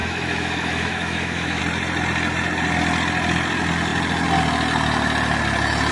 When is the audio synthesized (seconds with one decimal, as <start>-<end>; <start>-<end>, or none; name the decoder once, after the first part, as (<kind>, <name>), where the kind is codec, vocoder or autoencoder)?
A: 0.0-1.6 (autoencoder, DAC-VAE)